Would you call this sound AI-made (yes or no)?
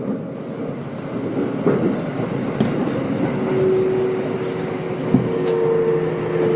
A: no